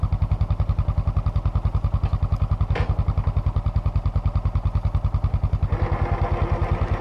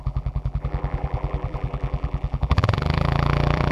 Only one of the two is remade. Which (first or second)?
second